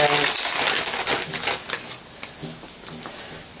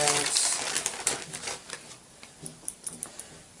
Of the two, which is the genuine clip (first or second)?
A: first